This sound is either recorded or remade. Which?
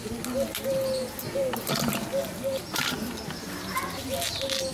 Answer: recorded